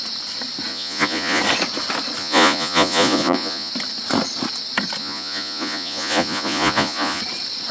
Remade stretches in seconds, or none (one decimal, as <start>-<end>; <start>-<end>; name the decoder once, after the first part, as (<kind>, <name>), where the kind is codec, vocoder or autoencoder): 0.7-1.4 (vocoder, Vocos); 2.2-3.7; 5.0-7.2

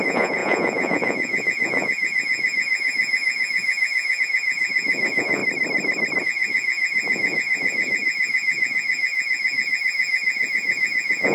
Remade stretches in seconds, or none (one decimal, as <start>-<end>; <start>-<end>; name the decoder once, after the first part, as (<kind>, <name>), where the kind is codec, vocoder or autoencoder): 0.0-5.4 (vocoder, Vocos); 6.2-11.3

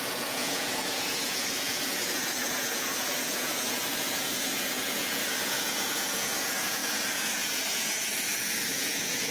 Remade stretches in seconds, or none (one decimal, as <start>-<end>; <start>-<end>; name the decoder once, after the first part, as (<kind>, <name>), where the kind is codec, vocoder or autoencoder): 0.0-9.3 (vocoder, Vocos)

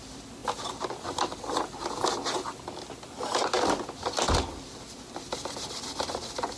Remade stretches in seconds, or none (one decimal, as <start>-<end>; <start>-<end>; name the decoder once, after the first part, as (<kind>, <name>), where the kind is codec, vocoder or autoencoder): none

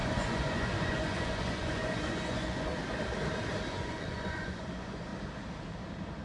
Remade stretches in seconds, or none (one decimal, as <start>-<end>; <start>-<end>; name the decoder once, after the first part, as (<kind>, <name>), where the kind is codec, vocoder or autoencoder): 0.0-2.7 (vocoder, Vocos); 3.7-5.1